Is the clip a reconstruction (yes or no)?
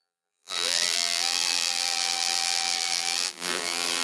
yes